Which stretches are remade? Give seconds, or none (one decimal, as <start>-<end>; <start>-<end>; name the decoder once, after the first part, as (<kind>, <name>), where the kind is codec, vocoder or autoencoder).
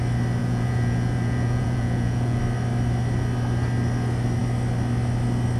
0.4-2.4 (vocoder, Vocos)